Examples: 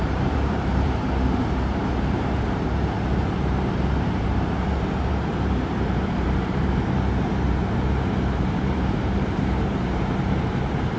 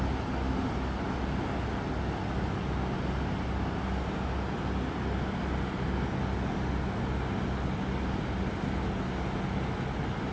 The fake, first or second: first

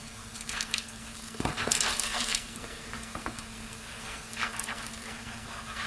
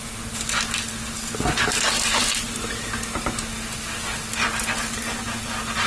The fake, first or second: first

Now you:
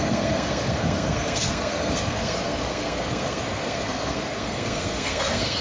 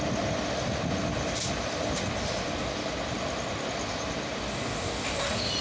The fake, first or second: first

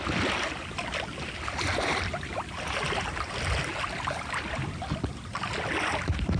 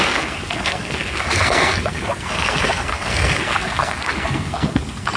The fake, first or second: second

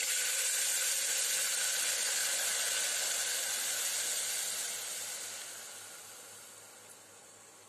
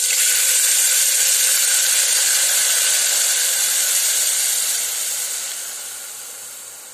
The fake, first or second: second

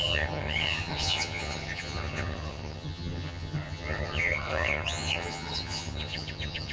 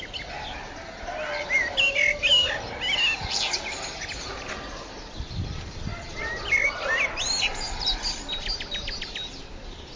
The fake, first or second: first